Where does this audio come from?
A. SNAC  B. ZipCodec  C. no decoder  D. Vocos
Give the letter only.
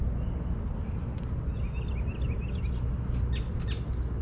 C